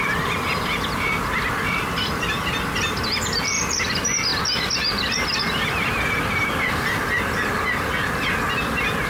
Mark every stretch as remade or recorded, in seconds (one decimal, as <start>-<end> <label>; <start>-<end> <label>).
0.0-9.1 recorded